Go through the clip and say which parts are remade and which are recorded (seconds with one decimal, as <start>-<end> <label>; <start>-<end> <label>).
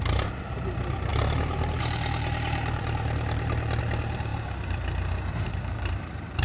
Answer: 0.0-6.4 remade